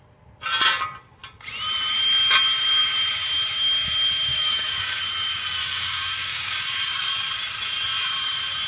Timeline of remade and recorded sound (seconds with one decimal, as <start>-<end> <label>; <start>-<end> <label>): 0.0-4.3 recorded; 4.3-5.0 remade; 5.0-5.6 recorded; 5.6-7.1 remade; 7.1-8.7 recorded